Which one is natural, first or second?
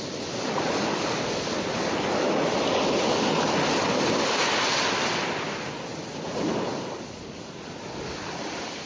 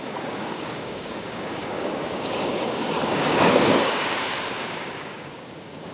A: first